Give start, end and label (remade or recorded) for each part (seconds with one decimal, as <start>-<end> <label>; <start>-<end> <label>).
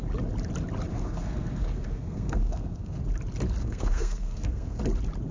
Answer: 0.0-0.9 recorded; 0.9-3.0 remade; 3.0-3.6 recorded; 3.6-4.8 remade; 4.8-5.3 recorded